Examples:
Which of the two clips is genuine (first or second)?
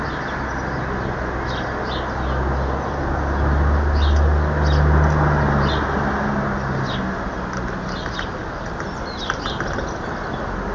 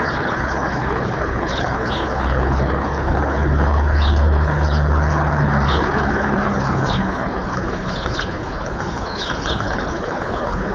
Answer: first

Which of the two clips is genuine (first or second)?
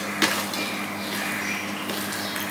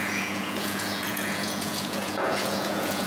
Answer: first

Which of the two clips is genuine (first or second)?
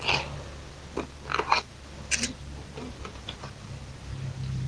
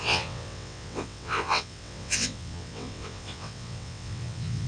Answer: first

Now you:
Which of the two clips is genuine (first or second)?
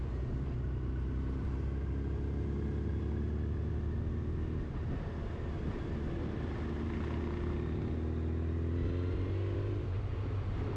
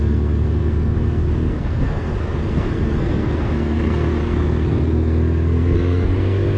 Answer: first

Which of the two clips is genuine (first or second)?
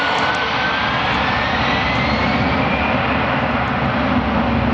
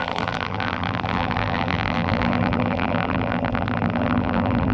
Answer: first